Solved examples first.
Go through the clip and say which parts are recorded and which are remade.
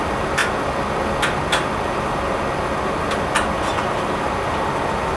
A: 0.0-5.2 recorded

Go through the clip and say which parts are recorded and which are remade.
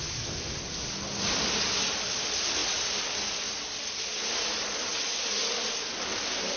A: 0.0-6.6 recorded